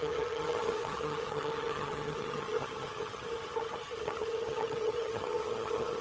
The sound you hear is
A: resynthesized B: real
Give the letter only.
A